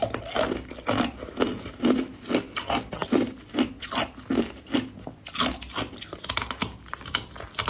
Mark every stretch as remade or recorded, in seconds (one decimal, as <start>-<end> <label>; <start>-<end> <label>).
0.0-7.7 recorded